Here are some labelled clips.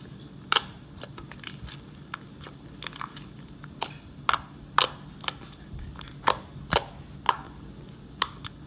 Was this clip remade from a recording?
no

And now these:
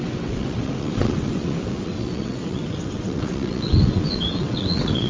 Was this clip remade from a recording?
yes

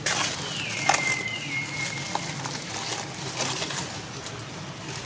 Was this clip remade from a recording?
no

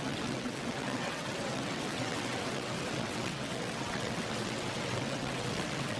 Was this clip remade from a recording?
yes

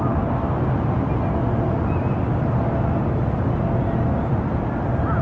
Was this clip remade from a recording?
no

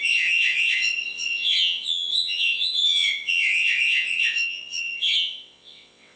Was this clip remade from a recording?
yes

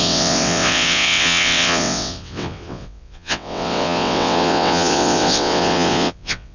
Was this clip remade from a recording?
yes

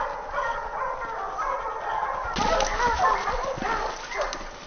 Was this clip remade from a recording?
no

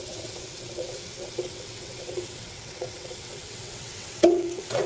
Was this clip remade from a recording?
yes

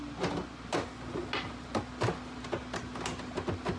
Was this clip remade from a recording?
no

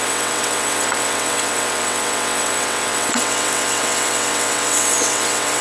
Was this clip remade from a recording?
yes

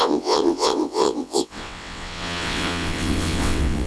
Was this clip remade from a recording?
yes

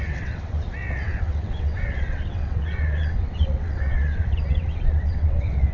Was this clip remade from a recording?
yes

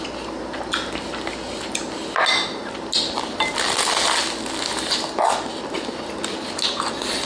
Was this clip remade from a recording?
no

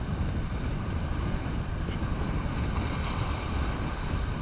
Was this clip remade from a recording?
no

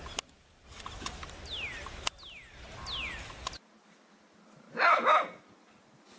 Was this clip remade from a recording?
no